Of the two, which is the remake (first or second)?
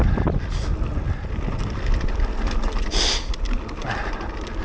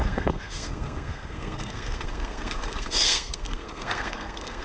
second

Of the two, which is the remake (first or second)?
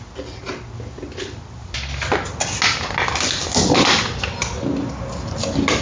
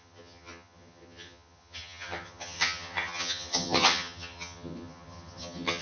second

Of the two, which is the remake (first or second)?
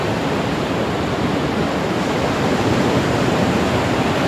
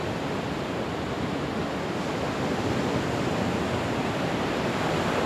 first